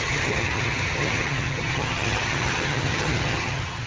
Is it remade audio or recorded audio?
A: remade